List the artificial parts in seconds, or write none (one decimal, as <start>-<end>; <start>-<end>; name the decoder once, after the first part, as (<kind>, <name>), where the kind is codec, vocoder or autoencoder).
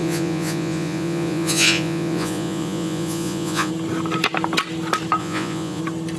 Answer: 0.0-3.7 (vocoder, Vocos); 5.2-5.8